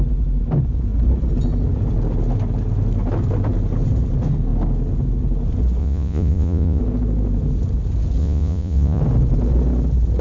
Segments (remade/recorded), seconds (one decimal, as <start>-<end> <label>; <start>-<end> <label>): 0.0-5.8 recorded; 5.8-6.8 remade; 6.8-8.2 recorded; 8.2-9.0 remade; 9.0-10.2 recorded

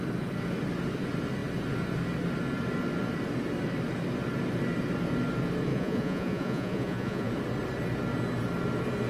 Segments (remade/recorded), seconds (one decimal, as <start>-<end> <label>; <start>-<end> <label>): 0.0-5.7 recorded; 5.7-7.3 remade; 7.3-9.1 recorded

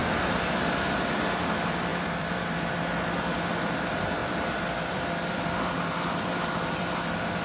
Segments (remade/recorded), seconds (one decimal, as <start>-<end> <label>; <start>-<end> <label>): 0.0-1.4 remade; 1.4-1.9 recorded; 1.9-2.7 remade; 2.7-4.2 recorded; 4.2-7.0 remade; 7.0-7.4 recorded

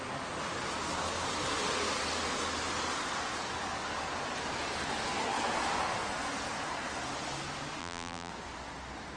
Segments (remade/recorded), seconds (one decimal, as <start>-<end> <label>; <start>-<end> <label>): 0.0-7.8 recorded; 7.8-8.3 remade; 8.3-9.2 recorded

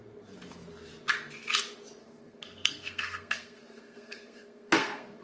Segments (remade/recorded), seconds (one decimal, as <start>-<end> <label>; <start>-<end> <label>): 0.0-2.0 recorded; 2.0-5.2 remade

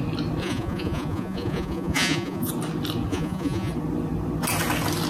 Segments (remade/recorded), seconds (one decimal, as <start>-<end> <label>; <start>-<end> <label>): 0.0-0.4 recorded; 0.4-2.5 remade; 2.5-3.1 recorded; 3.1-3.7 remade; 3.7-5.1 recorded

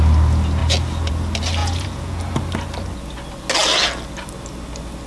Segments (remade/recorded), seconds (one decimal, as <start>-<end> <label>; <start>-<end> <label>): 0.0-1.6 recorded; 1.6-2.2 remade; 2.2-5.1 recorded

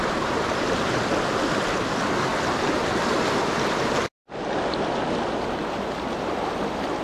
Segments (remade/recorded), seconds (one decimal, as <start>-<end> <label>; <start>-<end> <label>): 0.0-7.0 recorded